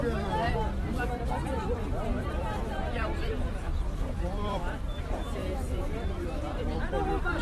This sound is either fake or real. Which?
fake